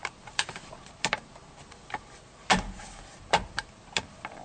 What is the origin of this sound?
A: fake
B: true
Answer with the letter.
B